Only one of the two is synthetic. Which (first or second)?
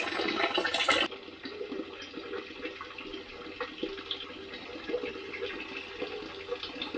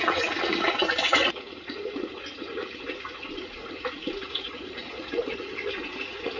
second